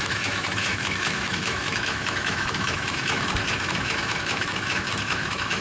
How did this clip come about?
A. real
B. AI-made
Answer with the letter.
B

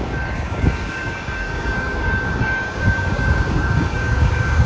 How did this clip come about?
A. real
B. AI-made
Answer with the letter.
B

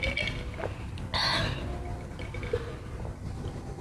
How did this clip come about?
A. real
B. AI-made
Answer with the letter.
A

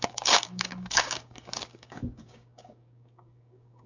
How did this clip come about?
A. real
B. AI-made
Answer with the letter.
B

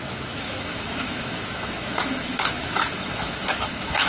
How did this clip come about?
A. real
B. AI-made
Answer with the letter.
B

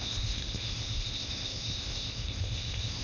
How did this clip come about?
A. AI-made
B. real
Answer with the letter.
A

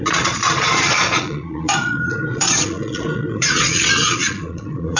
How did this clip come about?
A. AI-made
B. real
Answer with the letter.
A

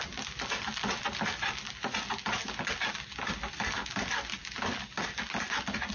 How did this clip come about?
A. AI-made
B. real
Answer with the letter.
B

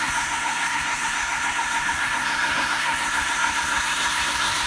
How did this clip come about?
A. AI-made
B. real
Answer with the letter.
A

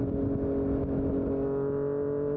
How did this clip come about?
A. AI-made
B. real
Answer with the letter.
B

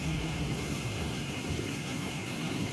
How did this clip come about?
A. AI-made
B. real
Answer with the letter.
A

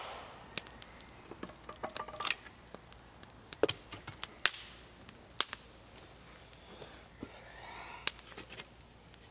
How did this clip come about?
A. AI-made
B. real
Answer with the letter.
B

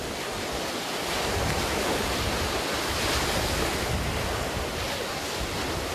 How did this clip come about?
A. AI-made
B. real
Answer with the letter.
B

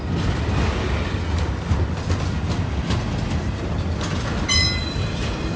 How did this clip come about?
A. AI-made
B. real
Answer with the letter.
B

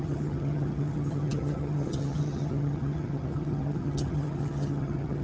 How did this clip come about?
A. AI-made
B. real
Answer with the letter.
A